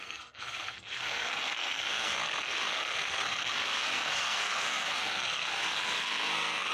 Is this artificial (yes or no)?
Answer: yes